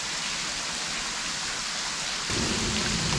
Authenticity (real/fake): real